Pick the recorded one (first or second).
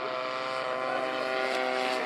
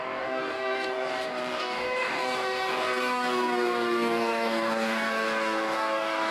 first